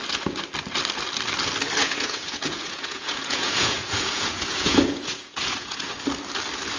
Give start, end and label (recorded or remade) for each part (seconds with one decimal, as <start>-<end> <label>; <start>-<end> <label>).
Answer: 0.0-1.8 recorded; 1.8-5.9 remade; 5.9-6.8 recorded